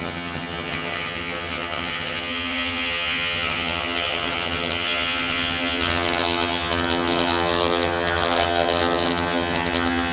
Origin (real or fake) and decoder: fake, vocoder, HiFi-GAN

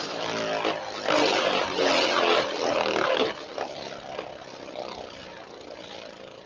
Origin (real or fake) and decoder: real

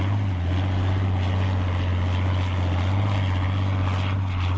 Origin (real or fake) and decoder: real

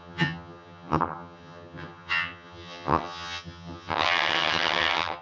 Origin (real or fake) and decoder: fake, vocoder, HiFi-GAN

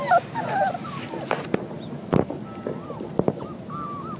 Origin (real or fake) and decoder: real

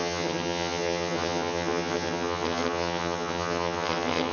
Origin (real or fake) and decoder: fake, vocoder, HiFi-GAN